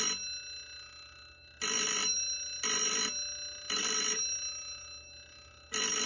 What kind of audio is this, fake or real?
real